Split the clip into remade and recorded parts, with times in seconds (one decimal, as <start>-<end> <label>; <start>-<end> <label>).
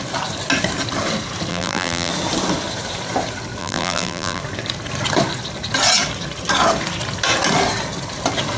0.0-1.5 recorded; 1.5-2.1 remade; 2.1-3.6 recorded; 3.6-4.4 remade; 4.4-8.6 recorded